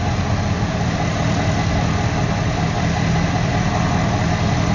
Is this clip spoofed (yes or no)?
no